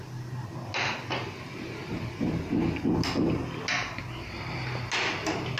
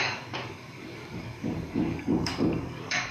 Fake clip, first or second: second